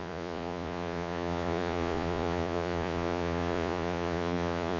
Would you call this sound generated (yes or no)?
yes